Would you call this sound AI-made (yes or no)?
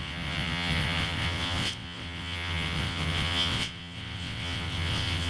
yes